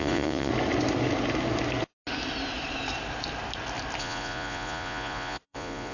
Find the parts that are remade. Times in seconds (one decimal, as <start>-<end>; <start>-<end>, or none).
0.0-0.5; 4.0-5.9